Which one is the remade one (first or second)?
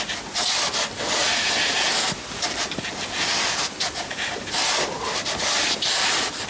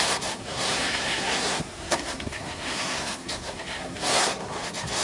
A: second